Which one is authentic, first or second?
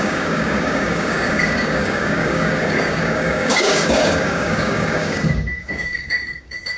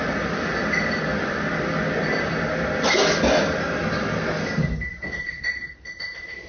second